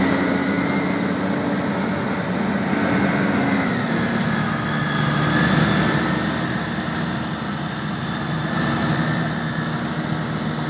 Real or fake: real